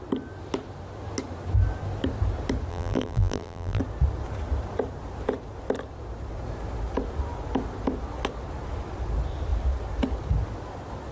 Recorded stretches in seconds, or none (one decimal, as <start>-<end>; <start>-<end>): 0.0-2.7; 3.8-11.1